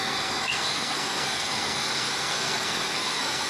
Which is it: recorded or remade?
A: remade